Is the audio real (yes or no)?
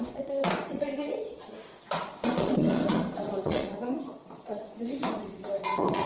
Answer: no